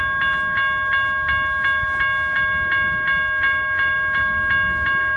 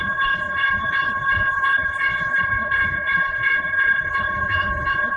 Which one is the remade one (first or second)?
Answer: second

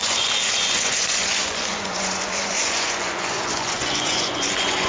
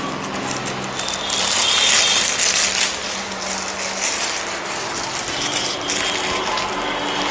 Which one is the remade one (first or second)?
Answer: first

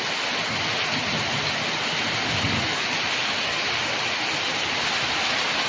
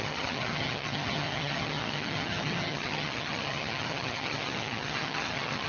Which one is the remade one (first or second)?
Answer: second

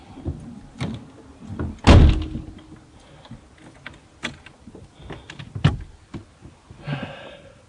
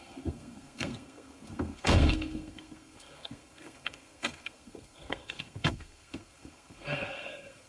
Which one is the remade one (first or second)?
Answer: second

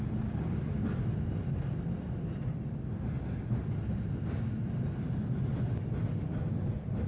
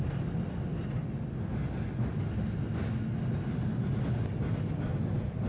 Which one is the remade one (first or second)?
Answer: first